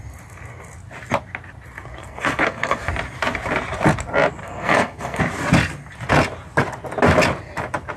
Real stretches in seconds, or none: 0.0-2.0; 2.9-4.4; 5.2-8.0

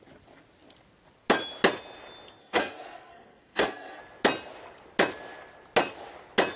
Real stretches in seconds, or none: 0.0-2.4; 4.0-6.6

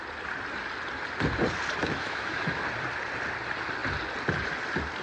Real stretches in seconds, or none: 0.0-1.8; 2.6-5.0

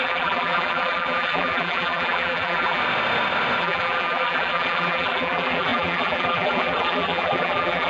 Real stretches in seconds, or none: 2.8-3.6

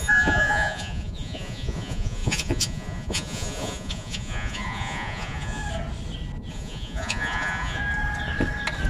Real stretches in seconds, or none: 5.6-6.5; 7.8-8.9

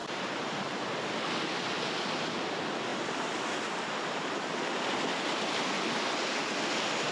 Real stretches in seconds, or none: 0.8-7.1

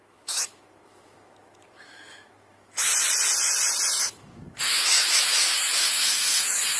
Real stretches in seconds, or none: 2.9-4.0